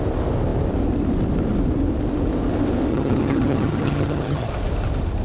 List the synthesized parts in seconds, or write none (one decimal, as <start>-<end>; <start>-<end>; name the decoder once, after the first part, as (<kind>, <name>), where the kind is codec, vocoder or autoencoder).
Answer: 2.9-4.5 (vocoder, HiFi-GAN)